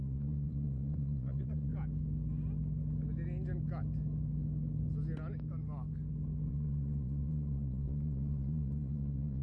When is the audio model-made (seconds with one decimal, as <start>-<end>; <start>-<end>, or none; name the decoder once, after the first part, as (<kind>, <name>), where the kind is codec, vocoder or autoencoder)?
0.0-1.7 (vocoder, Vocos); 6.5-9.4